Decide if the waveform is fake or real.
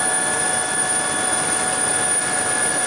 real